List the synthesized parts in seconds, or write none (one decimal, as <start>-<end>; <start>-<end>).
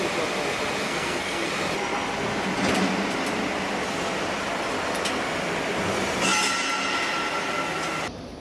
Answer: 0.8-1.5